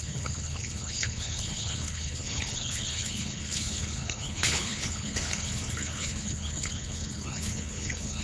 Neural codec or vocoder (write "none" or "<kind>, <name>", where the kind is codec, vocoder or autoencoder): codec, HILCodec